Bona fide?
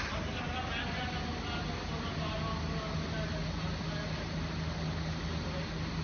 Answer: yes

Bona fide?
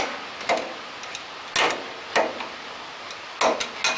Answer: yes